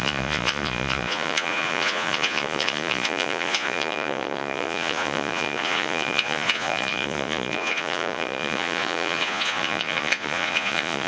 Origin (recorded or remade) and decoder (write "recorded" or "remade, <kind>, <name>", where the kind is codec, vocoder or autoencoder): remade, vocoder, Vocos